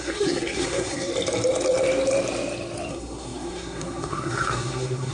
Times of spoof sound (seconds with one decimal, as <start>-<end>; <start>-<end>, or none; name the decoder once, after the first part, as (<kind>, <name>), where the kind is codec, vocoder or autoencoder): 0.0-1.1 (codec, SNAC); 2.9-5.1